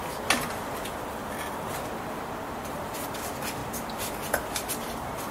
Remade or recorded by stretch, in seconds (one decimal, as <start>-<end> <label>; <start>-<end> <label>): 0.0-5.3 recorded